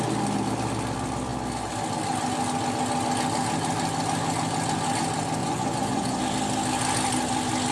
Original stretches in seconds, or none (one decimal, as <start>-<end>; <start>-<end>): 0.0-5.4; 6.2-7.7